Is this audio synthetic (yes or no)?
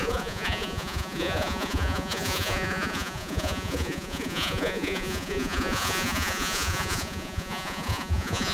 yes